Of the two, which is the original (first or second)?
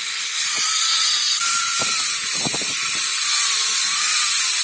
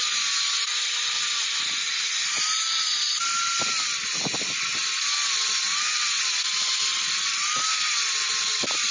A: second